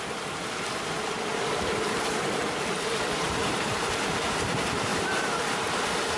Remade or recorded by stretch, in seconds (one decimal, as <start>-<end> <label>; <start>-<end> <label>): 0.0-1.3 recorded; 1.3-4.1 remade; 4.1-4.9 recorded; 4.9-5.8 remade; 5.8-6.2 recorded